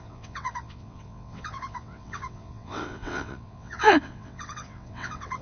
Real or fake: fake